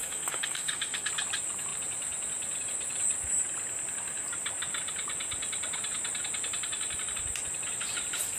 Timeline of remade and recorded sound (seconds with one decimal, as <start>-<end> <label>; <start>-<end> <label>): 0.0-1.1 remade; 1.1-8.4 recorded